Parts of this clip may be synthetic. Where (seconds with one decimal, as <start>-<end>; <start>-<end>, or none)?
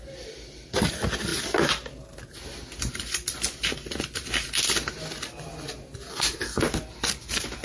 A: 6.1-6.6